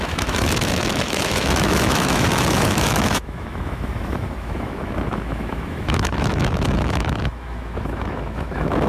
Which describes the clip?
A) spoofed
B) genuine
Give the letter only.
A